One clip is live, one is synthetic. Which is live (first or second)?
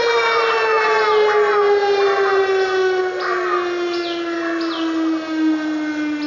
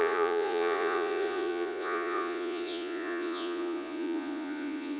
first